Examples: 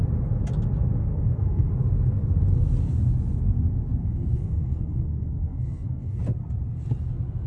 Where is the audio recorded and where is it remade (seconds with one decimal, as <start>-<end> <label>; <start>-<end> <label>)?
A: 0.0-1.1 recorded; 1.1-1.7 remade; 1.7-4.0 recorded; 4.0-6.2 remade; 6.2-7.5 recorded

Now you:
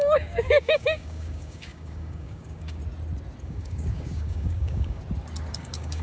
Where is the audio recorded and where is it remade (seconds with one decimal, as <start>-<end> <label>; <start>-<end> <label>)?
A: 0.0-2.8 remade; 2.8-3.4 recorded; 3.4-5.0 remade; 5.0-5.5 recorded; 5.5-6.0 remade

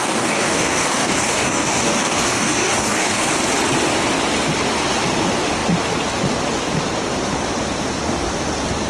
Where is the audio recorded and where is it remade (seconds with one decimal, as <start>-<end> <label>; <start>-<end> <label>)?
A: 0.0-3.3 remade; 3.3-8.9 recorded